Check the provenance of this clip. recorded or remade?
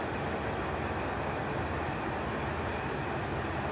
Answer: recorded